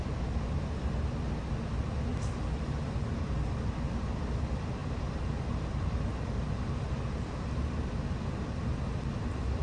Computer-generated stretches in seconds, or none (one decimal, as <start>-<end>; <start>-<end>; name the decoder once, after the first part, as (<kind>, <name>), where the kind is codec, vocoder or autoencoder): 4.8-8.0 (vocoder, BigVGAN v2)